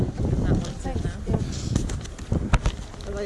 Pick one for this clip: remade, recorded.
recorded